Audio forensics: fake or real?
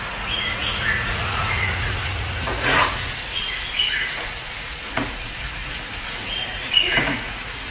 fake